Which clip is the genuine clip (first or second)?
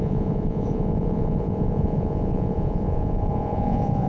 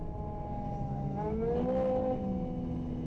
second